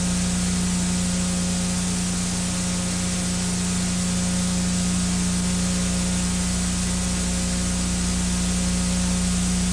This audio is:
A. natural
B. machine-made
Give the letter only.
A